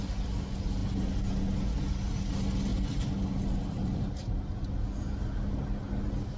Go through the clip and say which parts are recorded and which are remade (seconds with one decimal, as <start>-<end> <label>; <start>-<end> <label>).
0.0-2.7 recorded; 2.7-4.0 remade; 4.0-6.4 recorded

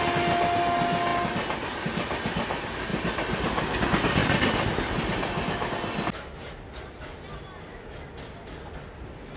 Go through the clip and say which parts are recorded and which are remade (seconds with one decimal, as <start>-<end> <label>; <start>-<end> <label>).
0.0-2.9 recorded; 2.9-3.8 remade; 3.8-9.4 recorded